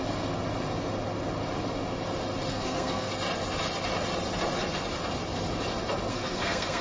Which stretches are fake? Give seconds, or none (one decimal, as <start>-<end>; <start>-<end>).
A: 2.5-3.1; 6.1-6.8